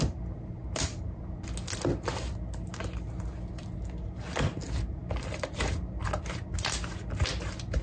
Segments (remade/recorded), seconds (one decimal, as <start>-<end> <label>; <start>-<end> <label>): 0.0-7.8 recorded